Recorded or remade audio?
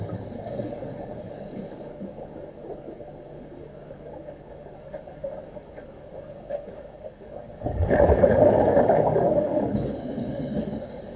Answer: remade